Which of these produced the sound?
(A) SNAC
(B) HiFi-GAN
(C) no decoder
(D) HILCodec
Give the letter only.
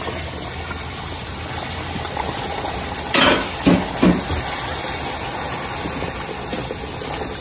C